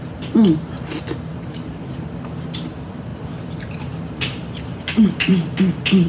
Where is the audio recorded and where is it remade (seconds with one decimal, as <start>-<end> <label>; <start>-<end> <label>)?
0.0-1.3 recorded; 1.3-5.3 remade; 5.3-6.1 recorded